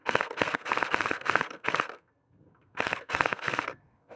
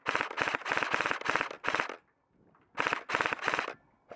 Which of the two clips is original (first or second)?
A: second